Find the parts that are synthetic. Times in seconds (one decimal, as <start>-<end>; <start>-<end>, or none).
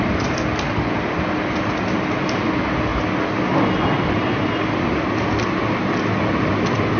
none